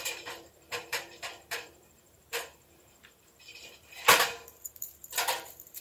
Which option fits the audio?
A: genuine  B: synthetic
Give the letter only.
B